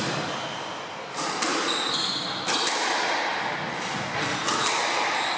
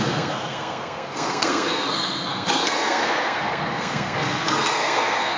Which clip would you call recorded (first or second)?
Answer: first